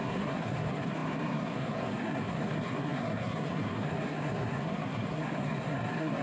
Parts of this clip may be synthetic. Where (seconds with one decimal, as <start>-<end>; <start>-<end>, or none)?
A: 0.0-6.2